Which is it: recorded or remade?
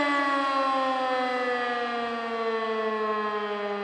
recorded